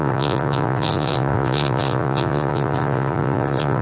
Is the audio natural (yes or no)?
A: no